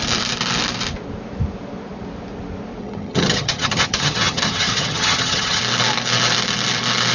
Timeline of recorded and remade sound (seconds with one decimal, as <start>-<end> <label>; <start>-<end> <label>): 0.0-2.8 recorded; 2.8-5.6 remade; 5.6-7.1 recorded